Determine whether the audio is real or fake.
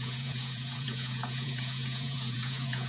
fake